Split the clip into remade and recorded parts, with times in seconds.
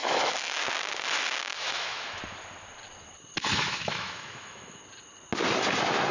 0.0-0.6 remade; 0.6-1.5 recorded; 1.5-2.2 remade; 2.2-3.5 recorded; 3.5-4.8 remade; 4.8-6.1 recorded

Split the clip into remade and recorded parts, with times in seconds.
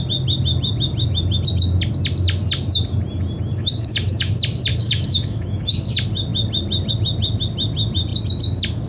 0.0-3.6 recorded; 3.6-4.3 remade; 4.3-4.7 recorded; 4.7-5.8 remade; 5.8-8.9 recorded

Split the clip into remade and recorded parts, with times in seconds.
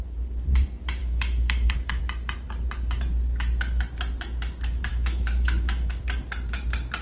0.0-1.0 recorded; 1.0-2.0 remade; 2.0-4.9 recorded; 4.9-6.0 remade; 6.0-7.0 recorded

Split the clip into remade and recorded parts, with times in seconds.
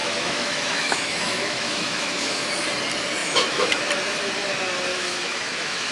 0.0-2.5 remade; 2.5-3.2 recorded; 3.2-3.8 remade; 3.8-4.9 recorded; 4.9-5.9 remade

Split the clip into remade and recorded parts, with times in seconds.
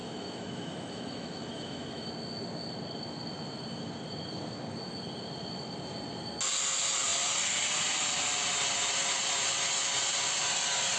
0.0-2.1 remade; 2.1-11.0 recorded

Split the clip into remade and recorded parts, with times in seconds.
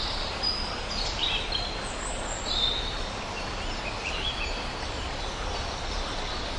0.0-6.6 recorded